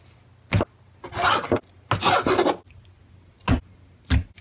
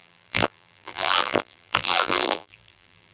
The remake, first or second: second